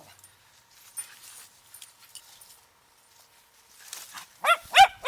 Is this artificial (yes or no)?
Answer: no